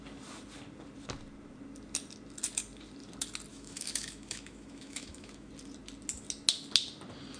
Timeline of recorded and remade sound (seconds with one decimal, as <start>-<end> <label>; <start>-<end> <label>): 0.0-3.5 recorded; 3.5-5.5 remade; 5.5-7.4 recorded